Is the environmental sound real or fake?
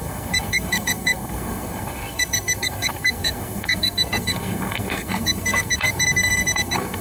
fake